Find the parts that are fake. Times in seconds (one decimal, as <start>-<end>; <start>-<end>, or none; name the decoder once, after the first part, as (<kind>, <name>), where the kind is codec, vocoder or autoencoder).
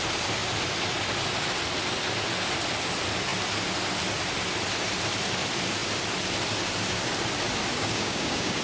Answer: 7.7-8.6 (codec, DAC)